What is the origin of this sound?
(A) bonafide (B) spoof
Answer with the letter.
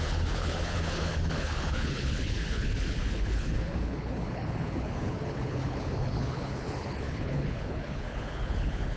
B